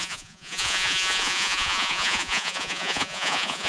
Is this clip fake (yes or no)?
yes